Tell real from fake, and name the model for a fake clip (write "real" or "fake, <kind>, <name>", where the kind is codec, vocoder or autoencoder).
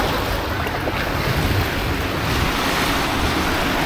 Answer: real